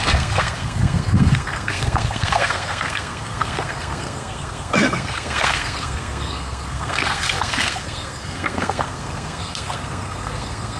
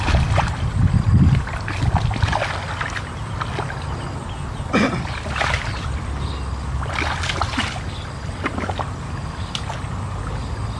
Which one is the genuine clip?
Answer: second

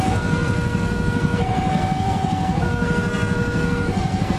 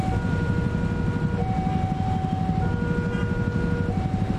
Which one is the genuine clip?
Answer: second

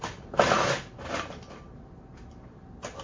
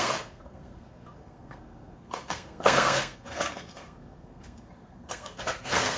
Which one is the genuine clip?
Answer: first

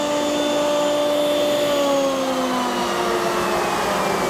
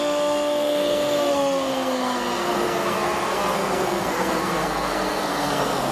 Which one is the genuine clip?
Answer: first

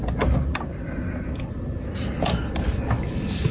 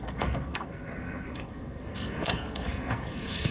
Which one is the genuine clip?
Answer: first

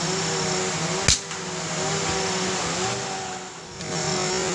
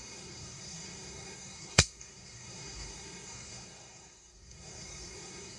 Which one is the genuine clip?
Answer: first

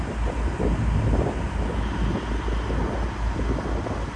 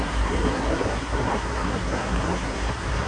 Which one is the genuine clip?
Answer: first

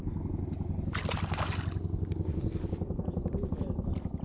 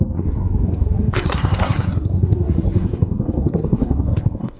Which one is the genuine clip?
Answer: first